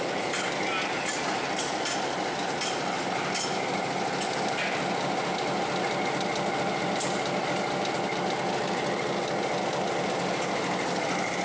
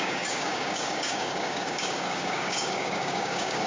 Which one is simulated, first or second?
second